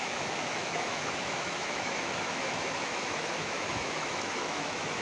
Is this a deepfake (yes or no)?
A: yes